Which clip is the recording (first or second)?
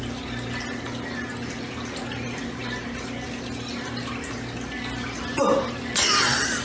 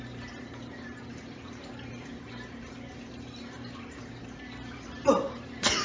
first